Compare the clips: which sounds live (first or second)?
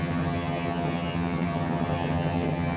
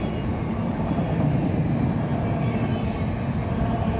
second